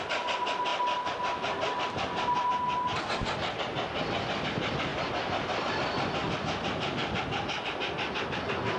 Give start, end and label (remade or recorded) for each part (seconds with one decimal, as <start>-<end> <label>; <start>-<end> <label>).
0.0-0.7 recorded; 0.7-2.5 remade; 2.5-4.9 recorded; 4.9-5.7 remade; 5.7-7.0 recorded; 7.0-7.7 remade; 7.7-8.8 recorded